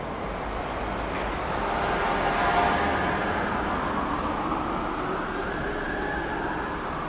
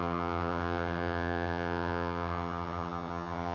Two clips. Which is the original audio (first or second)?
first